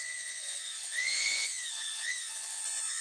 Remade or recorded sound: remade